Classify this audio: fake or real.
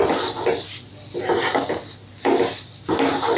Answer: fake